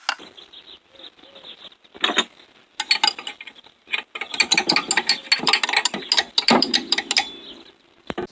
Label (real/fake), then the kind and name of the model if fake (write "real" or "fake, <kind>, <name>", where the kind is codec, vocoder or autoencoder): real